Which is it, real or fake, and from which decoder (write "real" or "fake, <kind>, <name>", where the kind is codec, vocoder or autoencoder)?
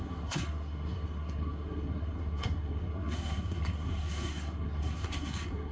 fake, codec, SNAC